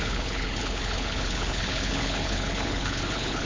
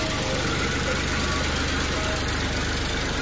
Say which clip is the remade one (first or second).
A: first